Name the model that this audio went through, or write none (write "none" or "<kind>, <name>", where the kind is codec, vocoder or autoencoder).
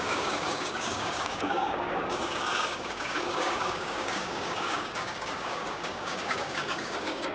codec, DAC